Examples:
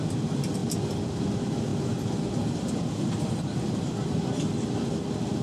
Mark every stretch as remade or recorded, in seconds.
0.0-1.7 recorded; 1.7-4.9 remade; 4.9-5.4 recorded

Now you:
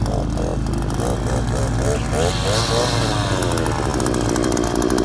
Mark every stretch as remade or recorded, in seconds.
0.0-5.0 recorded

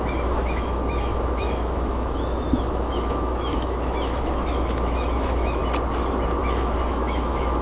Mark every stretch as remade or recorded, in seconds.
0.0-5.6 remade; 5.6-6.4 recorded; 6.4-7.6 remade

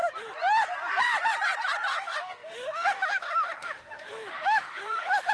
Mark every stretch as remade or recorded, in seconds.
0.0-1.9 recorded; 1.9-5.3 remade